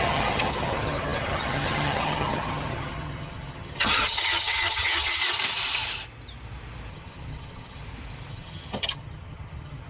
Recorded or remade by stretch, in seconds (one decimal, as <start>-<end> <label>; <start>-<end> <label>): 0.0-5.2 remade; 5.2-6.9 recorded; 6.9-7.8 remade; 7.8-8.3 recorded; 8.3-9.9 remade